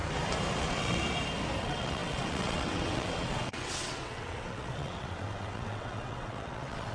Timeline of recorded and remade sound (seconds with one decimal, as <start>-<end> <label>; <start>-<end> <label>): 0.0-0.6 recorded; 0.6-1.0 remade; 1.0-1.6 recorded; 1.6-6.9 remade